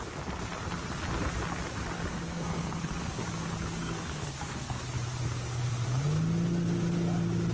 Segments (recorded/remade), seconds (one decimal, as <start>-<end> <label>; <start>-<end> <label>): 0.0-2.1 recorded; 2.1-3.2 remade; 3.2-3.8 recorded; 3.8-4.8 remade; 4.8-7.5 recorded